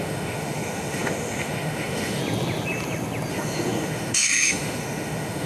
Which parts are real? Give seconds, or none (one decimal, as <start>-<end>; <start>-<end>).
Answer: 2.2-3.3